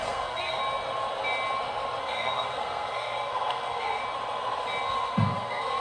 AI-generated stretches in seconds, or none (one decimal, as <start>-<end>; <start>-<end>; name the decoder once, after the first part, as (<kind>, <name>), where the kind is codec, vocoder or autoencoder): 0.0-0.6 (codec, SNAC); 2.0-4.0; 4.9-5.8